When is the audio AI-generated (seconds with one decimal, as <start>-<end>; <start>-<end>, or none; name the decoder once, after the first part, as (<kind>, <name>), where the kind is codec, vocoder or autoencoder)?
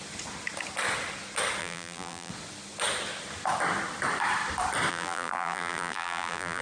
1.6-2.3 (vocoder, BigVGAN v2); 4.9-6.6